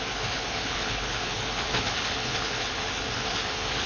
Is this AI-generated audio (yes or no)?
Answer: yes